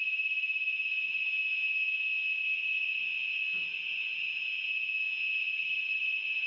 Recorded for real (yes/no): yes